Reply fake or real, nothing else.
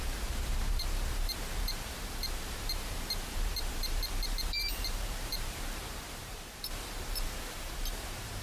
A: fake